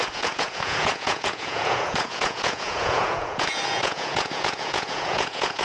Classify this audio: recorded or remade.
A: remade